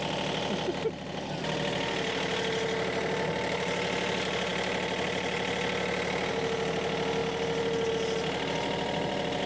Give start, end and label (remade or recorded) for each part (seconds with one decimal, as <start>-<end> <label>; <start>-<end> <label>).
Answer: 0.0-9.5 recorded